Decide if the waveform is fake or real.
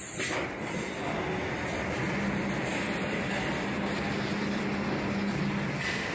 real